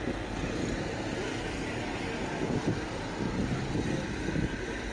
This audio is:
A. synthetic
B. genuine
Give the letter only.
B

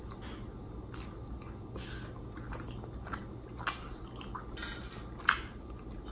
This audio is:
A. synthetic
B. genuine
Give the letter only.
B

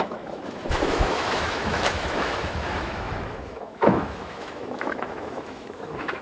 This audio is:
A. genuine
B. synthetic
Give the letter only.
B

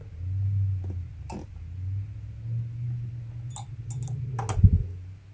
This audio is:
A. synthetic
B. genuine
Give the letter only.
B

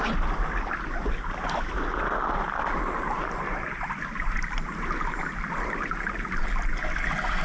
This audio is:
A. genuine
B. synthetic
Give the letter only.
A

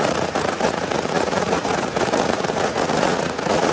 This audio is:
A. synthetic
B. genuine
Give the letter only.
A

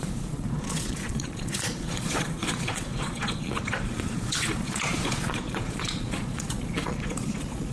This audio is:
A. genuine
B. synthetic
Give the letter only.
B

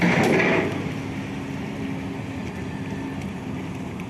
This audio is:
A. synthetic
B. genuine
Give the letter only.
B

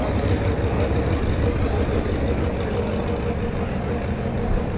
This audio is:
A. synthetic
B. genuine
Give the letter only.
B